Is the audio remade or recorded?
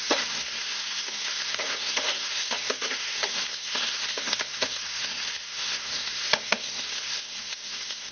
remade